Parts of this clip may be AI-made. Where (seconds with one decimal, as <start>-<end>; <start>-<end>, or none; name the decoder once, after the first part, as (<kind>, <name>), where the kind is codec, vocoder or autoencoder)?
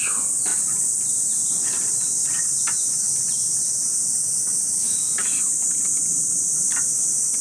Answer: none